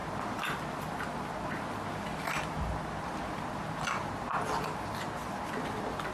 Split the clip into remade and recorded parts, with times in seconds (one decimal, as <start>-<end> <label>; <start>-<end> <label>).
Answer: 0.0-2.1 recorded; 2.1-3.3 remade; 3.3-6.1 recorded